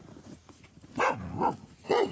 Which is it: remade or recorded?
remade